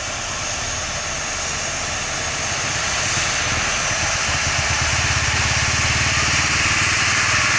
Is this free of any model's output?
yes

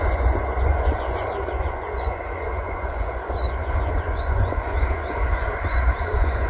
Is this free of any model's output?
no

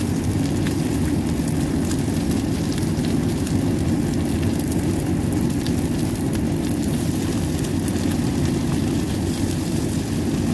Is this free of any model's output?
yes